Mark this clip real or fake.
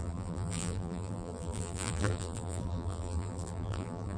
fake